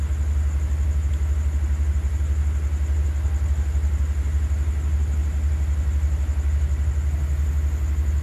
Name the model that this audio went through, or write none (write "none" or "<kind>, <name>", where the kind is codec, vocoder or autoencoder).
none